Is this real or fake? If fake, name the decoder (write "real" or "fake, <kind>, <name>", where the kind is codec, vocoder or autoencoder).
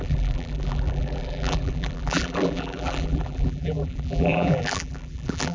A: fake, vocoder, BigVGAN v2